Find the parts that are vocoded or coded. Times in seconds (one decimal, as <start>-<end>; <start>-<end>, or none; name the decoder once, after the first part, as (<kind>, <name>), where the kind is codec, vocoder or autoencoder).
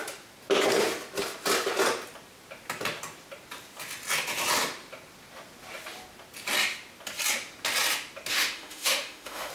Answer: 8.3-9.5 (autoencoder, DAC-VAE)